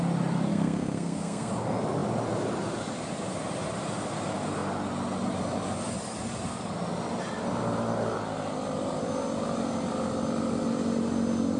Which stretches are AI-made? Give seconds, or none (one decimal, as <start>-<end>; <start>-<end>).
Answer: 0.5-1.5